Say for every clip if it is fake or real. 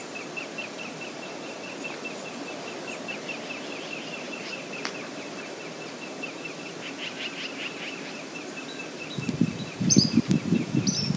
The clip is fake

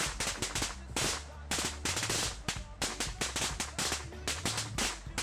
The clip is real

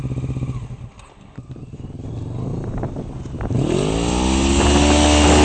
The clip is real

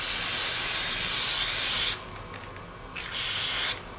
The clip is real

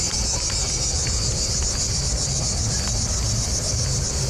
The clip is fake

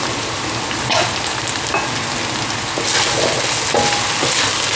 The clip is real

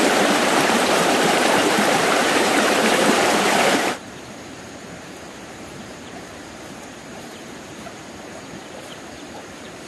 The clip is fake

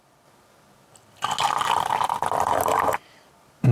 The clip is real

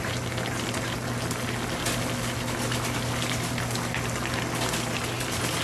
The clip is real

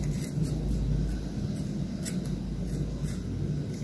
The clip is real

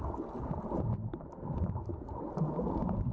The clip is real